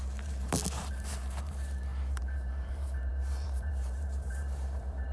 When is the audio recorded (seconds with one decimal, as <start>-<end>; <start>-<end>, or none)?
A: none